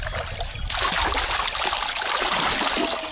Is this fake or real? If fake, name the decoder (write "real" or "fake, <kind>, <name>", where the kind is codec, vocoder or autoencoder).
real